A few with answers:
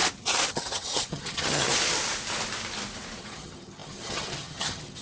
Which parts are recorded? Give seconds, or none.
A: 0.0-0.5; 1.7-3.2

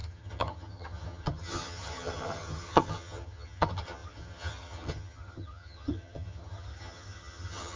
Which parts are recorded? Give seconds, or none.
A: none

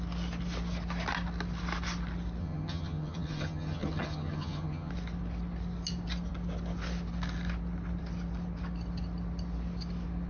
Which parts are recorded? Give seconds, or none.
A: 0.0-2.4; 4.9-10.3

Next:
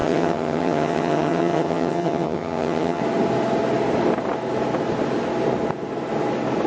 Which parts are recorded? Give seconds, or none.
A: 3.0-6.7

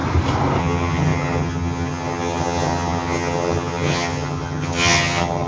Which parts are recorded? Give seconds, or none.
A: 0.0-0.6

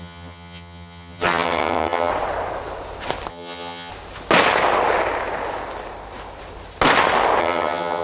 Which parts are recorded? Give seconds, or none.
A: 2.1-3.3; 3.9-7.4

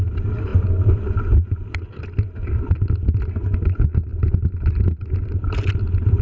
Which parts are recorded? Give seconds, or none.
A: 0.0-6.2

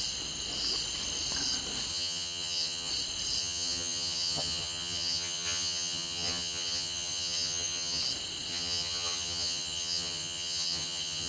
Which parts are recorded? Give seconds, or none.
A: 0.0-1.9; 2.9-3.4; 8.0-8.5